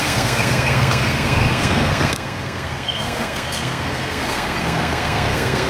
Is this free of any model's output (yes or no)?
no